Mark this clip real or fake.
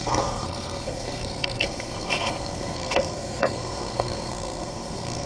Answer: fake